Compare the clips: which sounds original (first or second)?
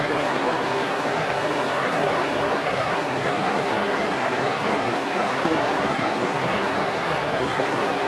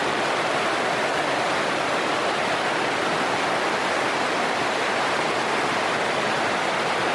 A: second